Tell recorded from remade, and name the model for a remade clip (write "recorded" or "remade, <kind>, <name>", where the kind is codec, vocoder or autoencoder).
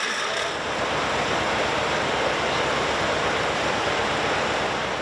recorded